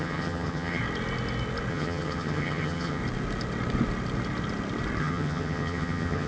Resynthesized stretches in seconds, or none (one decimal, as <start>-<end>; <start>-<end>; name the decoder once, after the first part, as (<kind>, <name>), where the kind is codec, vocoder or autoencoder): 0.0-0.8 (vocoder, HiFi-GAN); 1.7-3.0; 5.0-6.3